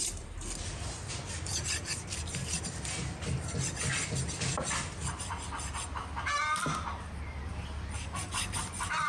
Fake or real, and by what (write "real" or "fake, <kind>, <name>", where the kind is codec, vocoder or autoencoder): real